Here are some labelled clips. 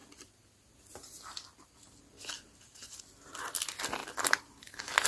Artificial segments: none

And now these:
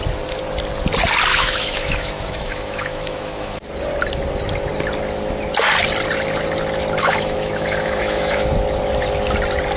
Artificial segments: 1.3-3.6 (autoencoder, DAC-VAE); 7.0-8.5

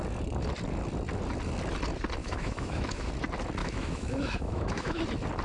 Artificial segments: 2.2-3.1 (autoencoder, DAC-VAE); 3.6-5.0

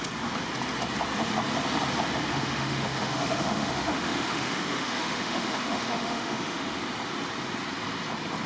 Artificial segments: 2.3-6.8 (autoencoder, DAC-VAE)